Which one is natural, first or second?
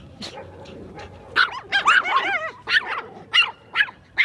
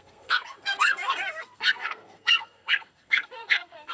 first